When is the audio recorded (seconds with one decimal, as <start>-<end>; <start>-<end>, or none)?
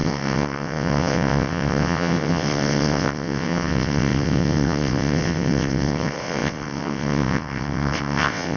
none